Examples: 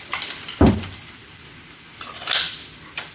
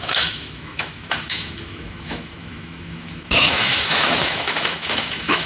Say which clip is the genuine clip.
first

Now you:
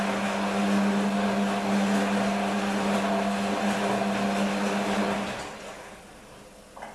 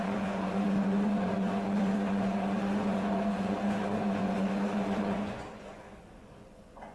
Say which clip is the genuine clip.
first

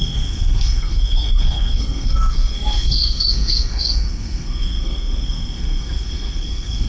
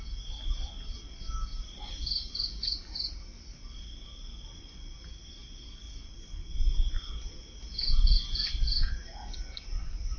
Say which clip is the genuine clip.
second